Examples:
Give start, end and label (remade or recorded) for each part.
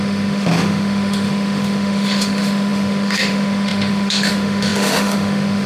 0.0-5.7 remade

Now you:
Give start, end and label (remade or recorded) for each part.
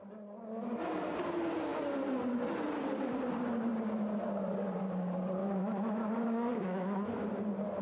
0.0-5.4 recorded; 5.4-7.1 remade; 7.1-7.8 recorded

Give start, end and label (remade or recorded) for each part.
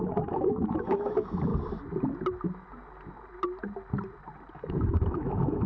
0.0-1.5 remade; 1.5-4.5 recorded; 4.5-5.7 remade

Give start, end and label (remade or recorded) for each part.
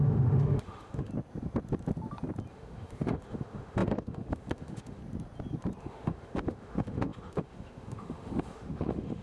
0.0-1.1 remade; 1.1-2.5 recorded; 2.5-5.0 remade; 5.0-5.8 recorded; 5.8-9.2 remade